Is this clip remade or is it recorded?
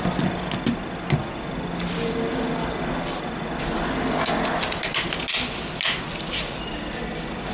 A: recorded